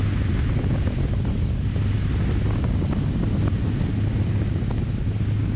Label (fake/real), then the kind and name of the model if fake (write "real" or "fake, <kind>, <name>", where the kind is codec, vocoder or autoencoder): real